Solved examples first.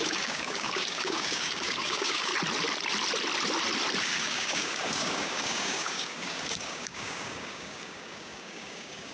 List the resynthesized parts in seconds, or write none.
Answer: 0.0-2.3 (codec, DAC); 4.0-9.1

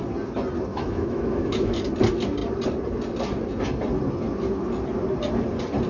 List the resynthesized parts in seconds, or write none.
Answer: 0.7-1.8 (autoencoder, DAC-VAE)

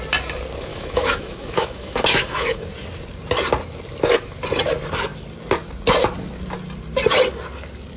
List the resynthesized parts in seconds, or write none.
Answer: 0.7-2.7 (autoencoder, DAC-VAE)

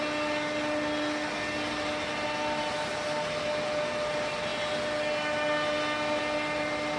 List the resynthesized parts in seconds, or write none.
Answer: none

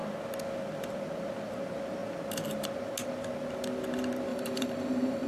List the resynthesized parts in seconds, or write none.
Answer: 4.3-5.3 (vocoder, BigVGAN v2)

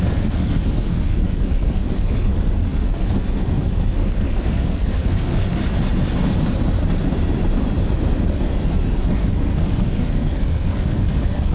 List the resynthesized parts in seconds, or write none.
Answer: 0.0-5.6 (codec, SNAC); 8.3-11.5

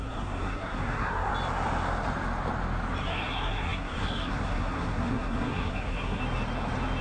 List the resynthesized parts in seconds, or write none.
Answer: 0.0-1.3 (codec, SNAC); 3.0-6.2